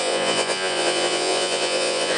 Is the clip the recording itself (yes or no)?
no